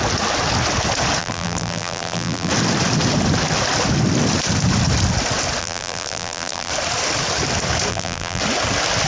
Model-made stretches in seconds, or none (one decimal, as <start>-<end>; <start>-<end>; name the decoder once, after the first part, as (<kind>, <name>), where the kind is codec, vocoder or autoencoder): 1.2-2.5 (vocoder, BigVGAN v2); 5.6-6.7; 7.9-8.4